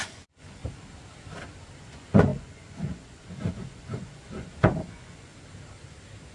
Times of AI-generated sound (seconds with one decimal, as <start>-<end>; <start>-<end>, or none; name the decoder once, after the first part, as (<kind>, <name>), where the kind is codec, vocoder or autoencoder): 0.0-0.6 (vocoder, Vocos); 1.8-5.3